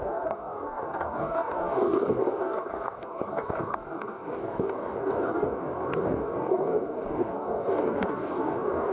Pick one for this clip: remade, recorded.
remade